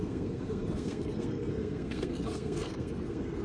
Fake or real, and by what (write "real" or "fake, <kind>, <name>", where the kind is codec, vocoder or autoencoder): fake, codec, SNAC